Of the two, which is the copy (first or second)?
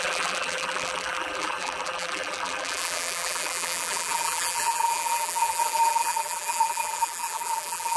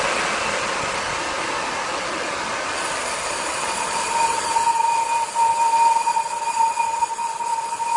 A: first